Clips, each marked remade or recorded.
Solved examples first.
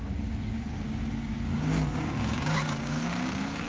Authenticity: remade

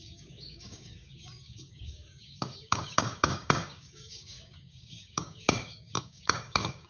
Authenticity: remade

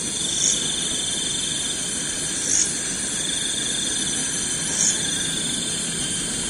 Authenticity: recorded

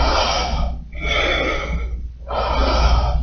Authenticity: recorded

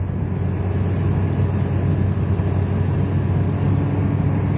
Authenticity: recorded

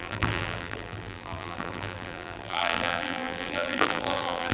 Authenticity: remade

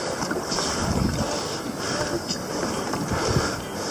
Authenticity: recorded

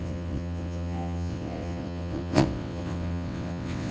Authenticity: remade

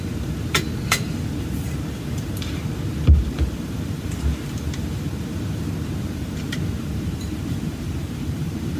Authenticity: remade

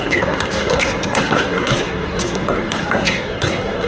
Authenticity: remade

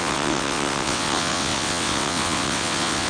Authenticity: remade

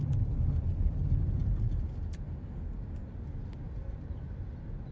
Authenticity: recorded